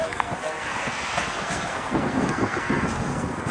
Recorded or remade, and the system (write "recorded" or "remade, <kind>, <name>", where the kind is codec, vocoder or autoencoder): remade, codec, SNAC